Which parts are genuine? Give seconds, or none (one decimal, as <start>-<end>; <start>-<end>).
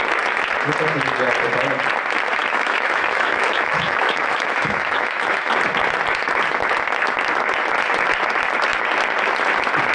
0.0-2.4; 5.5-9.9